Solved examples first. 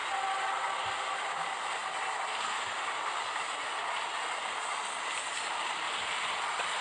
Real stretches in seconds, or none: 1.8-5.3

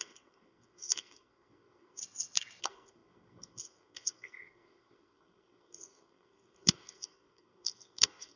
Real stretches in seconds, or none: 2.0-2.6

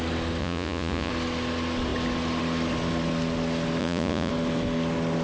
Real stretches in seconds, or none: 0.0-0.4; 1.1-3.8; 4.3-5.2

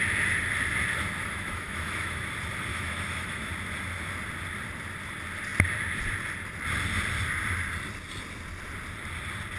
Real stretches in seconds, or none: 0.0-1.2; 2.2-2.7; 3.5-9.6

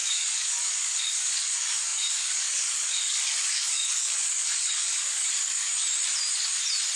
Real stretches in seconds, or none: 5.7-7.0

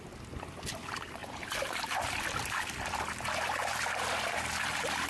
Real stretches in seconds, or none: 0.0-5.1